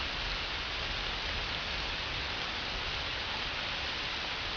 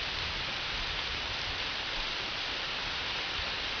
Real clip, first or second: first